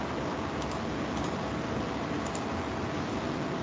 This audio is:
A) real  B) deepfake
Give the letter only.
A